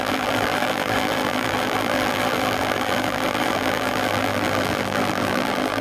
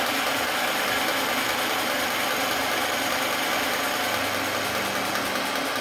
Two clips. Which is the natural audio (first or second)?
second